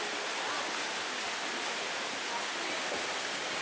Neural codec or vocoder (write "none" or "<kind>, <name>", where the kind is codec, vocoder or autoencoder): none